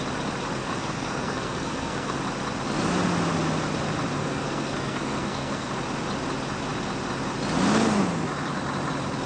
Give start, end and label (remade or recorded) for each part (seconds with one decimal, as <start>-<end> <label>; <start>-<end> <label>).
0.0-0.6 recorded; 0.6-2.2 remade; 2.2-4.2 recorded; 4.2-5.7 remade; 5.7-9.3 recorded